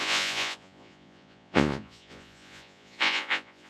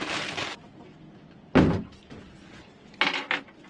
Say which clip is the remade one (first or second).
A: first